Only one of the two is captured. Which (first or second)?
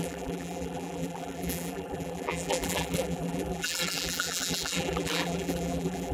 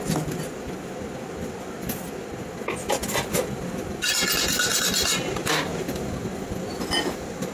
second